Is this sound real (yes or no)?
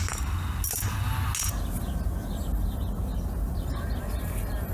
yes